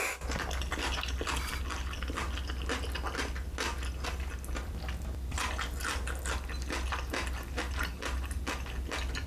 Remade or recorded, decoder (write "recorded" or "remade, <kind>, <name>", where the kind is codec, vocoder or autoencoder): recorded